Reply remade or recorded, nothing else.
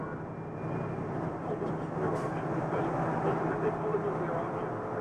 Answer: recorded